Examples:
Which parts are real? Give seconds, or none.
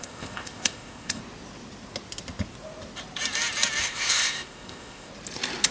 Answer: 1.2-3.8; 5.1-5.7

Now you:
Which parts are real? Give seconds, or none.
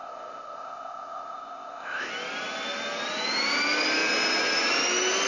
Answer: 2.1-5.3